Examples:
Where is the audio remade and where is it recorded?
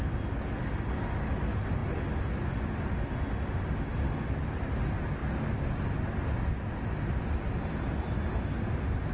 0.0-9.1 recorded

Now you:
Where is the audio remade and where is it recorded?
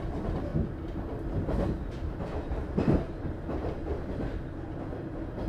0.0-5.5 recorded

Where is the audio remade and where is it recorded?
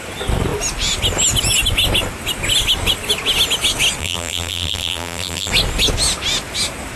0.0-4.0 recorded; 4.0-5.5 remade; 5.5-7.0 recorded